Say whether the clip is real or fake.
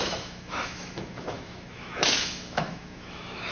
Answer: fake